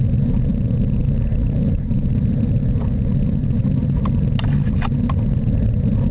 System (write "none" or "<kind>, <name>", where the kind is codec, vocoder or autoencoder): none